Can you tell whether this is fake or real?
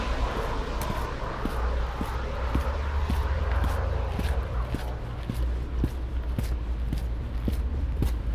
real